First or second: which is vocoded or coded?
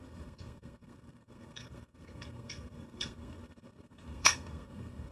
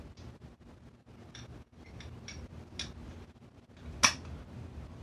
first